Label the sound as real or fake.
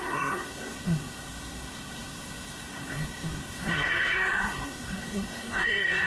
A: fake